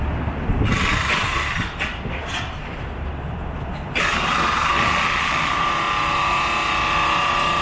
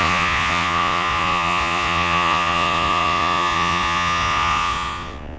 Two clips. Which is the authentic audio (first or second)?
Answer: first